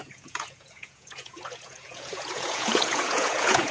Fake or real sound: fake